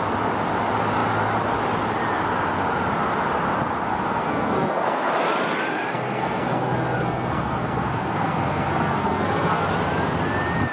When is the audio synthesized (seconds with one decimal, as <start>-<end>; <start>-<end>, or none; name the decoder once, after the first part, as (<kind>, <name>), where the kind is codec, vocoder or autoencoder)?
3.9-5.1 (codec, SNAC); 5.9-9.6